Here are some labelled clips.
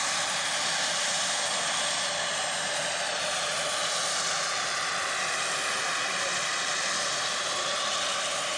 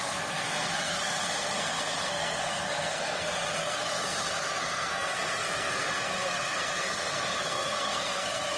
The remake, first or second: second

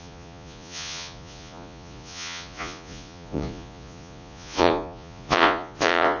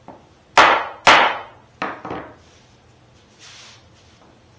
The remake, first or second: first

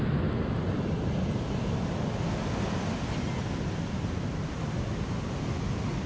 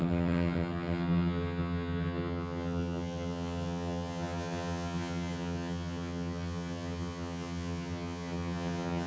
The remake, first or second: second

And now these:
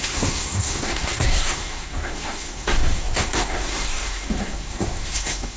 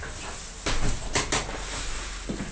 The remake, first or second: first